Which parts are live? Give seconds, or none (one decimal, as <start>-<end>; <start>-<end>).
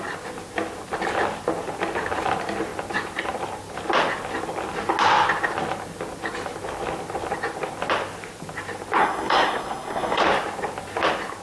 0.0-9.0; 10.2-11.4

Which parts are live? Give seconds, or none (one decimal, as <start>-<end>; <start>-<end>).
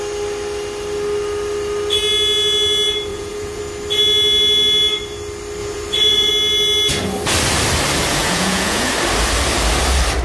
0.0-3.1; 3.6-5.6; 6.3-8.2; 8.9-10.2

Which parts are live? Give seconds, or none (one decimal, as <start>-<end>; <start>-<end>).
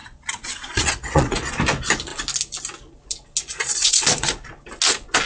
1.6-3.5; 4.5-5.3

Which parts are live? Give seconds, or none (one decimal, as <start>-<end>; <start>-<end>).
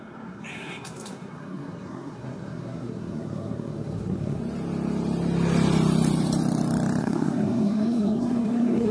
4.4-7.0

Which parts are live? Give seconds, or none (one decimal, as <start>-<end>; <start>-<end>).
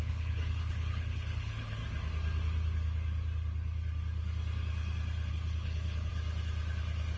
1.8-5.3; 6.1-7.2